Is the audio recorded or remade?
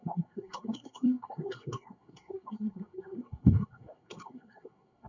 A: remade